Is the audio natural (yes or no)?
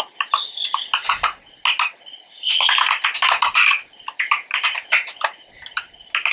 yes